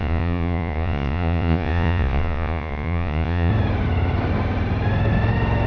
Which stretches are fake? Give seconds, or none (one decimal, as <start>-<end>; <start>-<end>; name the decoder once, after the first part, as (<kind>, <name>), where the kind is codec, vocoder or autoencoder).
0.0-3.5 (vocoder, Vocos)